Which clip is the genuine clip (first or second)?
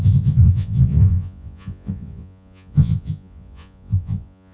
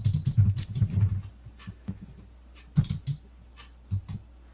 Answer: second